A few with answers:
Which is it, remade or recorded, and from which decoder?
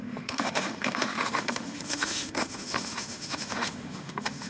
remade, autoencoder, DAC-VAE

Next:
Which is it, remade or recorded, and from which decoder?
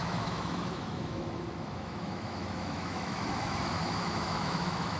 remade, autoencoder, DAC-VAE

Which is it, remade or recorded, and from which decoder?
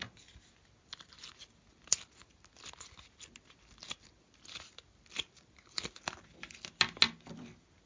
recorded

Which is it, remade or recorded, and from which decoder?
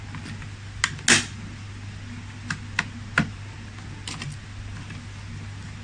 recorded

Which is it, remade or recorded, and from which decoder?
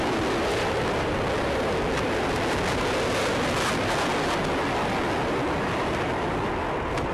recorded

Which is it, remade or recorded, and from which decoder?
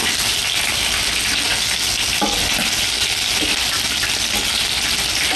recorded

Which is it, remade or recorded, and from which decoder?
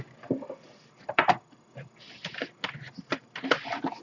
recorded